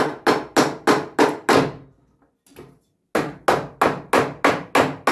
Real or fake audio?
real